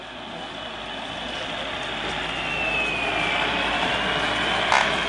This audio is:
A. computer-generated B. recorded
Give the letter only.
B